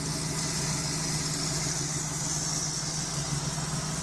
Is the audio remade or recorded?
recorded